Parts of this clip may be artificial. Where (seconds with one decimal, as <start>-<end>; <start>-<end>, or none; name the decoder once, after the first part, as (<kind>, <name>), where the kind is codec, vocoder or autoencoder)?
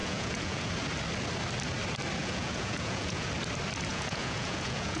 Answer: 0.0-0.7 (vocoder, Vocos); 2.2-3.3; 3.9-5.0